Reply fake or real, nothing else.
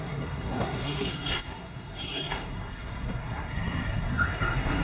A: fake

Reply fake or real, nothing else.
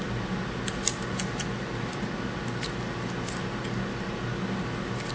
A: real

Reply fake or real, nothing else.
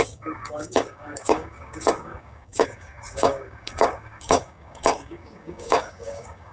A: fake